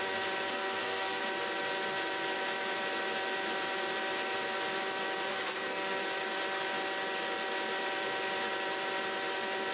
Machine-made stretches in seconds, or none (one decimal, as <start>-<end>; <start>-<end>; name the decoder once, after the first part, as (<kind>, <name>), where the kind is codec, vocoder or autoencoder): 0.5-1.2 (codec, SNAC); 5.3-6.0